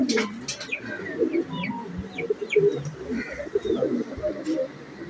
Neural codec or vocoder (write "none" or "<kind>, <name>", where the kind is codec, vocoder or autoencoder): none